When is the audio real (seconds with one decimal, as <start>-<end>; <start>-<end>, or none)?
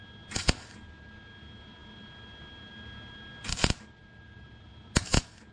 0.0-5.5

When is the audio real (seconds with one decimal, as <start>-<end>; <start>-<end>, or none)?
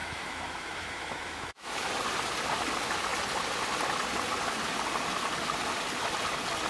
1.9-6.7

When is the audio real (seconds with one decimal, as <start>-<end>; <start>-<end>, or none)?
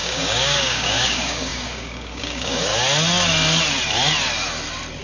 2.7-5.0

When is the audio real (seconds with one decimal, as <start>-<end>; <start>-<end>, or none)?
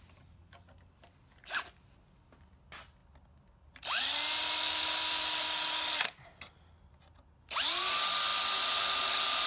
0.0-9.5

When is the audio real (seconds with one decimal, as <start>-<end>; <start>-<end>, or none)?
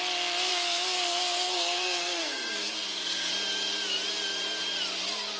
0.0-0.5; 3.3-5.4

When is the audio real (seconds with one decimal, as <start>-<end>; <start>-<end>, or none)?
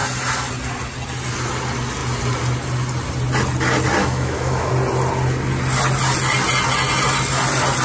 0.0-4.0; 4.7-7.8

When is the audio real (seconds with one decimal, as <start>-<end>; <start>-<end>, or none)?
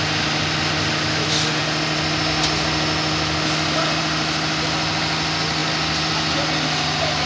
0.0-7.3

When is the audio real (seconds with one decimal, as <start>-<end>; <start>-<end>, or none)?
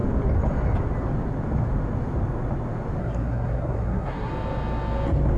0.0-3.0; 4.3-5.4